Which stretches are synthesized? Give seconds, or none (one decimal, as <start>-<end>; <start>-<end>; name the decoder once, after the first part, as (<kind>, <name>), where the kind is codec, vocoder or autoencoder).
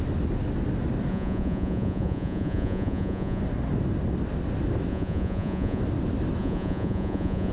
1.1-3.4 (vocoder, Vocos); 4.9-5.8; 6.4-7.5